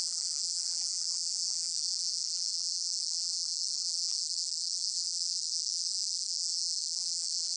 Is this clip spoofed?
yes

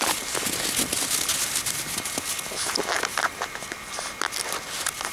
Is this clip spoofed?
no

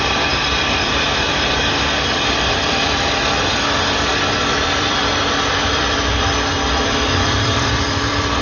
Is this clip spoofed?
yes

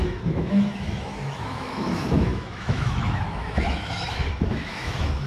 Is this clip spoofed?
yes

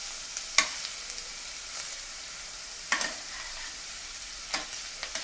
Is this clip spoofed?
yes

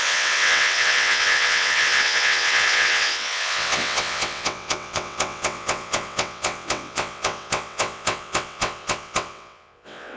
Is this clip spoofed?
yes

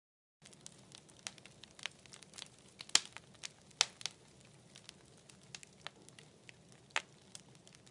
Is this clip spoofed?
no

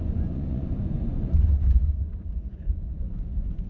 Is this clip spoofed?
yes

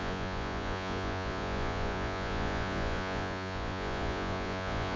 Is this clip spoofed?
yes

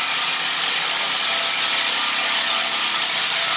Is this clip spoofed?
no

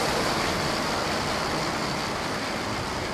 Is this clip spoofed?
yes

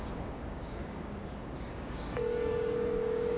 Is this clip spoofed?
yes